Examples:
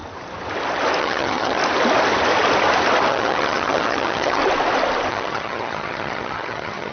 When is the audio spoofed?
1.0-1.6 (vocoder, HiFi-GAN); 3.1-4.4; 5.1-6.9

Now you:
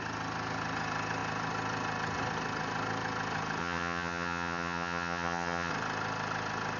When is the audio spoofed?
3.6-5.7 (vocoder, HiFi-GAN)

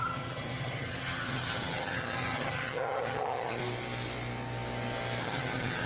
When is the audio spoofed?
0.0-3.6 (vocoder, HiFi-GAN); 5.2-5.9

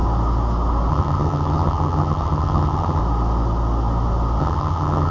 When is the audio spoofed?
0.9-3.0 (vocoder, HiFi-GAN); 4.4-5.1

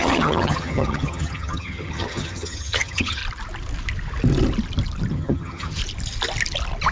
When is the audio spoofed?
0.0-3.2 (vocoder, HiFi-GAN); 5.1-5.8

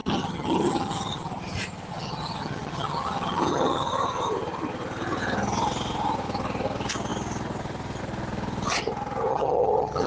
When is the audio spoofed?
0.0-1.3 (vocoder, HiFi-GAN); 1.9-3.9; 9.3-10.1

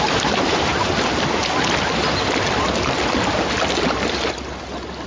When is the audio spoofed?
none